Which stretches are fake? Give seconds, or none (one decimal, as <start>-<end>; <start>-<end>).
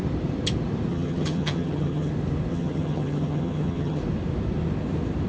0.9-2.1; 2.5-4.0